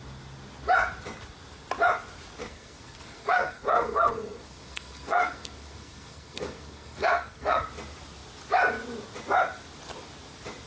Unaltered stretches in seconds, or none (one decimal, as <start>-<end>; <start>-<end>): 0.0-2.4; 7.6-10.7